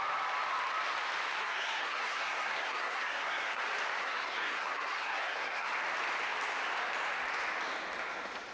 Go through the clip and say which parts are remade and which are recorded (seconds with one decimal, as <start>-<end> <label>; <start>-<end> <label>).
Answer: 0.0-1.4 recorded; 1.4-3.6 remade; 3.6-4.0 recorded; 4.0-5.7 remade; 5.7-8.5 recorded